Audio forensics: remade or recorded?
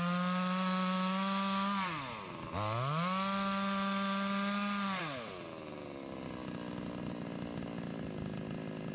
recorded